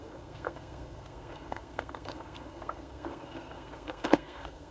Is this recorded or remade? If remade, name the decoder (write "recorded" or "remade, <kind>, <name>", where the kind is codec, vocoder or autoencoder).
remade, codec, SNAC